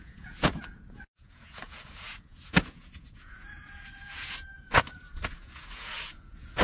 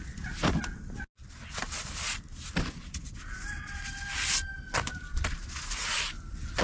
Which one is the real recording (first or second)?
second